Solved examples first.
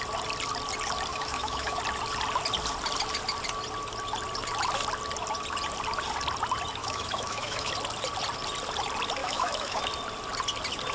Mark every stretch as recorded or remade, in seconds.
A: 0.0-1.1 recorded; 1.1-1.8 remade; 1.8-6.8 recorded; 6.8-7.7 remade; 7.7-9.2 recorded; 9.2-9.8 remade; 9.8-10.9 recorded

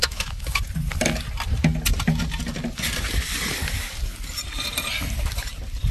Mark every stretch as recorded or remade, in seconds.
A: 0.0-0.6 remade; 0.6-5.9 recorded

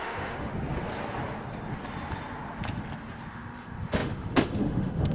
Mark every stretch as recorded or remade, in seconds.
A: 0.0-0.5 remade; 0.5-3.3 recorded; 3.3-5.1 remade

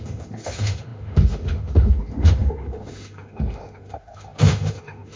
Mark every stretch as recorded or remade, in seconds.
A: 0.0-5.2 remade

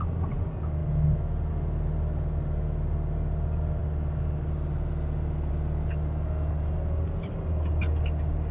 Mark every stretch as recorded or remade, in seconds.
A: 0.0-8.5 recorded